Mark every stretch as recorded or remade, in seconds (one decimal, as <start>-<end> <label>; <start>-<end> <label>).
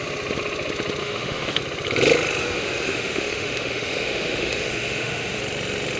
0.0-1.0 recorded; 1.0-1.6 remade; 1.6-2.4 recorded; 2.4-5.4 remade; 5.4-6.0 recorded